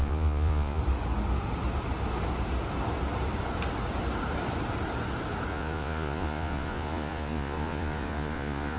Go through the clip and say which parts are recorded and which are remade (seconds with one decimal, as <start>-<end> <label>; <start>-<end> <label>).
0.0-0.8 remade; 0.8-5.5 recorded; 5.5-8.8 remade